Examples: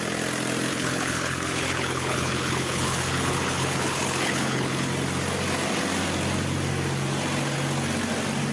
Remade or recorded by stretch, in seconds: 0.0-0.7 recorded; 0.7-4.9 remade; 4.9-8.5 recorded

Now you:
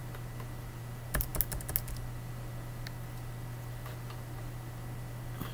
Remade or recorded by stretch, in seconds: 0.0-5.5 recorded

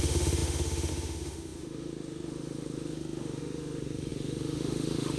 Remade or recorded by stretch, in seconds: 0.0-5.2 remade

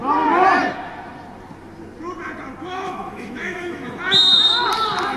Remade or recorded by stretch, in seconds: 0.0-2.7 recorded; 2.7-4.0 remade; 4.0-5.2 recorded

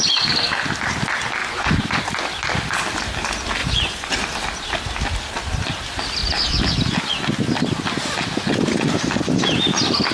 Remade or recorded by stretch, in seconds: 0.0-1.4 recorded; 1.4-2.1 remade; 2.1-3.6 recorded; 3.6-4.1 remade; 4.1-10.1 recorded

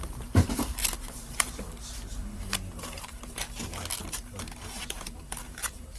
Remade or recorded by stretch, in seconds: 0.0-2.2 remade; 2.2-2.8 recorded; 2.8-3.4 remade; 3.4-4.0 recorded; 4.0-6.0 remade

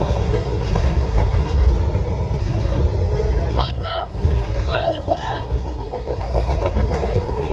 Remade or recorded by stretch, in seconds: 0.0-1.7 remade; 1.7-2.4 recorded; 2.4-2.8 remade; 2.8-3.5 recorded; 3.5-7.5 remade

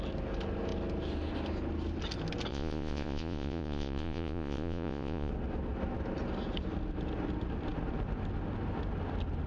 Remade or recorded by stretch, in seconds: 0.0-2.5 recorded; 2.5-5.3 remade; 5.3-9.5 recorded